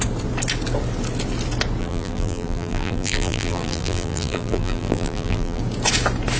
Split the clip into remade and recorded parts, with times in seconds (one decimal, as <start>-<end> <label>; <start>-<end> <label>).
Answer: 0.0-1.8 recorded; 1.8-5.6 remade; 5.6-6.4 recorded